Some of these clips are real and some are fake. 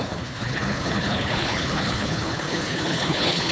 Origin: fake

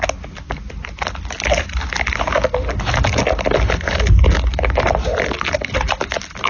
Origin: real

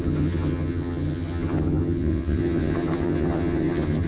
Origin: fake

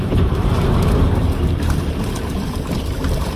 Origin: fake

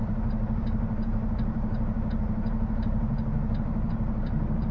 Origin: fake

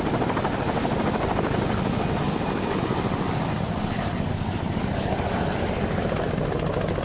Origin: real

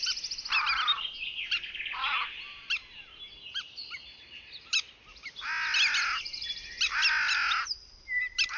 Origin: real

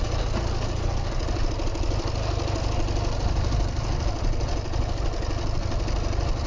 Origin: real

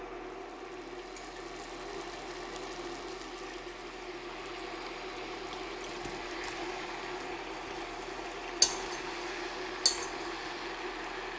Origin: real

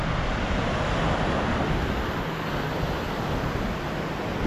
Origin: real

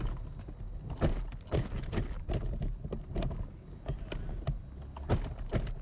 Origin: real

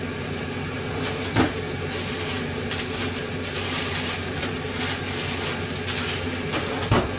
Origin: real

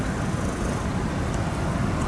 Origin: real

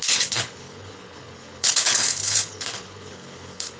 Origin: fake